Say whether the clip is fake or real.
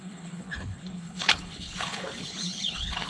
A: fake